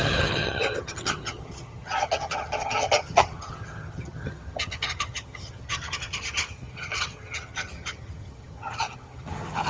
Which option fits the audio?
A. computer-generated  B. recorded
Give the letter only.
A